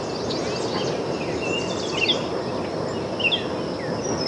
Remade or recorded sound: recorded